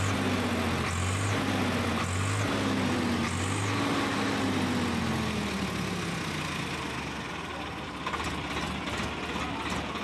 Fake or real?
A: real